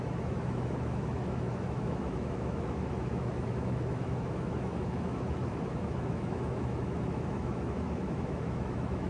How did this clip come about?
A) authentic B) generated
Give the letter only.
B